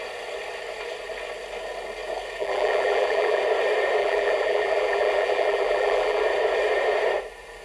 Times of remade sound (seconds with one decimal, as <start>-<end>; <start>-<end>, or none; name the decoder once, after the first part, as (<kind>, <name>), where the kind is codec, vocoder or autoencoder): 2.4-3.4 (vocoder, BigVGAN v2); 4.0-6.2